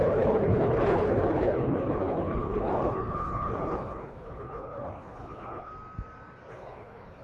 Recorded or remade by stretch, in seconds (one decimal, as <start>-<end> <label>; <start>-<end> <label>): 0.0-5.7 remade; 5.7-6.5 recorded; 6.5-7.2 remade